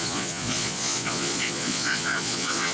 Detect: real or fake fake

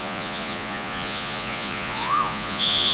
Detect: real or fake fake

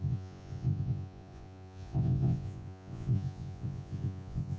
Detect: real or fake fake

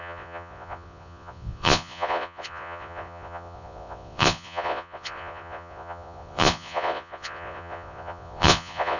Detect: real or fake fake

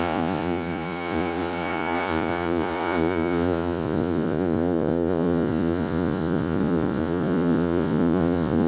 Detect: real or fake fake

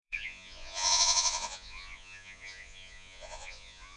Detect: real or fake fake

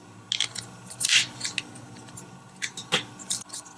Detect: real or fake real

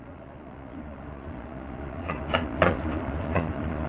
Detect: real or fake fake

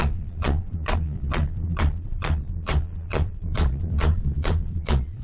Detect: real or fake fake